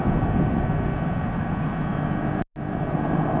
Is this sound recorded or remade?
recorded